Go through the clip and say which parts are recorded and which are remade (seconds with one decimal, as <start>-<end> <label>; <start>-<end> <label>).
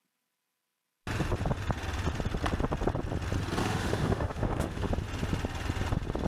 0.0-3.6 recorded; 3.6-4.9 remade; 4.9-6.3 recorded